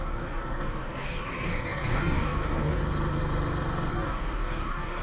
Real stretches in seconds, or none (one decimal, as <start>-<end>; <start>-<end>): 2.8-3.9